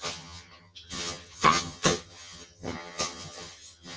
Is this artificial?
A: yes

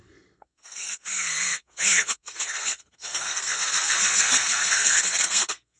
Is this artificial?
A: yes